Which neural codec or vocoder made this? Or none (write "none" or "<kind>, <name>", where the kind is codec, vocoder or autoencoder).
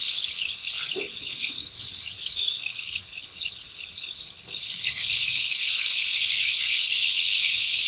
codec, HILCodec